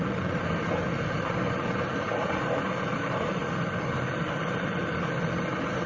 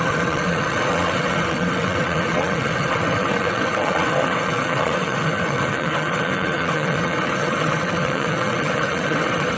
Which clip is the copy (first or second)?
second